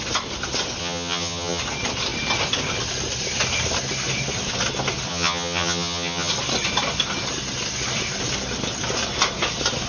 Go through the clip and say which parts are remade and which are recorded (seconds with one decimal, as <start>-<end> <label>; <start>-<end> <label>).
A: 0.0-0.8 recorded; 0.8-1.6 remade; 1.6-5.1 recorded; 5.1-6.3 remade; 6.3-9.9 recorded